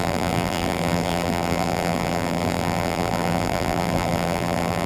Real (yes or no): no